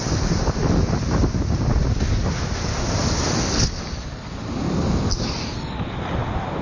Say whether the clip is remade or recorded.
recorded